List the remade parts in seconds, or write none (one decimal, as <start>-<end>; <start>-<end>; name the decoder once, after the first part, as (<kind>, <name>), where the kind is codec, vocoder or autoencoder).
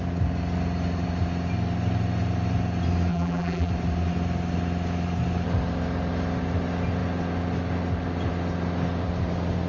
3.1-3.7 (vocoder, BigVGAN v2)